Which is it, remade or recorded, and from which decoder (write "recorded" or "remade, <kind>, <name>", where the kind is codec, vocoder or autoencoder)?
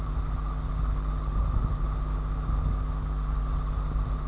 recorded